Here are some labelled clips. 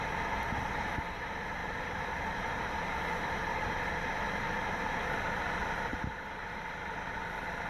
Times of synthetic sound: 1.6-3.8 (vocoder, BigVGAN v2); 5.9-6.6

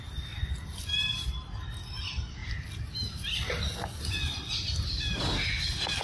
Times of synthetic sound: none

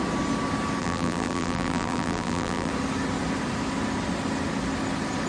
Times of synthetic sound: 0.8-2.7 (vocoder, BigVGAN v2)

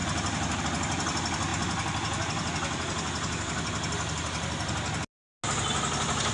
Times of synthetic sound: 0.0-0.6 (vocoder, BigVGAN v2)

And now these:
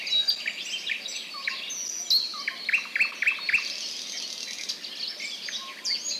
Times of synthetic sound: none